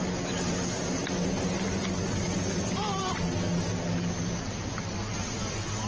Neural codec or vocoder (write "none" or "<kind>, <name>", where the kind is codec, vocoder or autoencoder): none